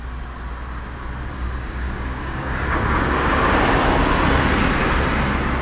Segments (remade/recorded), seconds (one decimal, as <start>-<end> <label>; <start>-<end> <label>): 0.0-1.3 recorded; 1.3-4.1 remade; 4.1-5.6 recorded